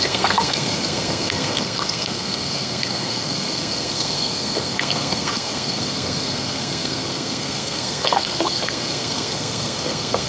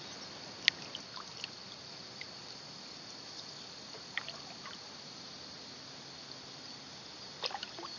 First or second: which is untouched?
second